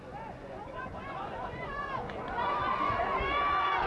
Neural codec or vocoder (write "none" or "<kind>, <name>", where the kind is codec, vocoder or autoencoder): vocoder, Vocos